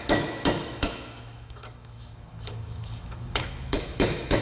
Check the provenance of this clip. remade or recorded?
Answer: remade